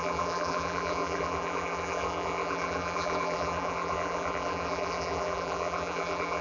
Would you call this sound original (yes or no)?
no